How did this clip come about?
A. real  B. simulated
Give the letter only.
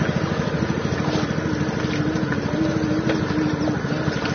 A